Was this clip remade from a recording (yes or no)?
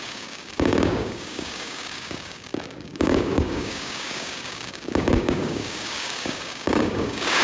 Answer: yes